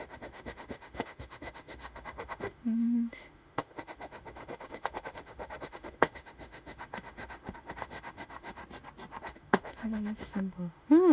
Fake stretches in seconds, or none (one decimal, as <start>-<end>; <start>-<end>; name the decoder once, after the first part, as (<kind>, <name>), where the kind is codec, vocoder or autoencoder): 0.0-8.6 (autoencoder, DAC-VAE); 9.2-11.1